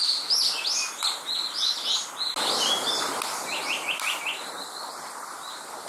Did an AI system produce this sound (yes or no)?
no